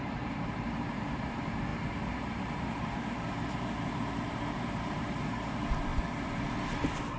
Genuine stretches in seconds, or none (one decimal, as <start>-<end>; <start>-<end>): 5.9-7.2